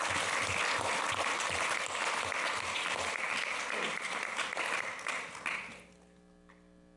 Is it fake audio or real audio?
real